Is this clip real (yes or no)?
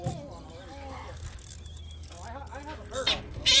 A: yes